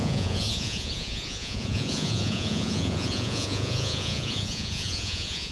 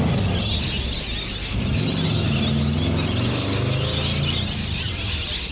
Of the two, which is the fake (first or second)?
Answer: first